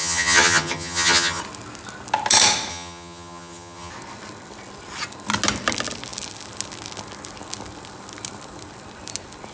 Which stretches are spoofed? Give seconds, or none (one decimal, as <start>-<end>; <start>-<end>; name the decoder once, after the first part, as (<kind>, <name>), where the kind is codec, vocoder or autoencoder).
0.0-1.4 (vocoder, HiFi-GAN); 2.7-3.9